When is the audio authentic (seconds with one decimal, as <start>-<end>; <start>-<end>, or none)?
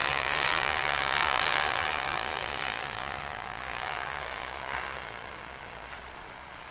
none